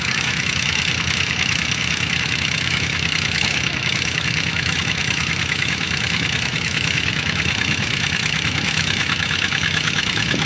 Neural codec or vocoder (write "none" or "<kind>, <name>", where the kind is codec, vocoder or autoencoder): autoencoder, DAC-VAE